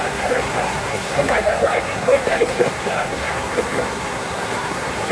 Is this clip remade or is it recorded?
remade